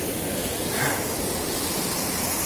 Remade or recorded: recorded